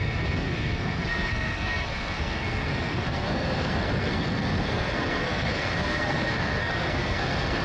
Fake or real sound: fake